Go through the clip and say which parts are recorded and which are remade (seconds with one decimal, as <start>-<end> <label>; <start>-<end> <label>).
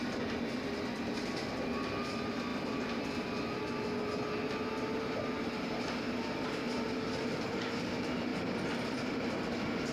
0.0-2.5 recorded; 2.5-3.0 remade; 3.0-8.3 recorded; 8.3-9.3 remade; 9.3-9.9 recorded